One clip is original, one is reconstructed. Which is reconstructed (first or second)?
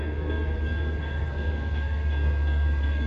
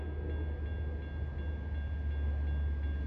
first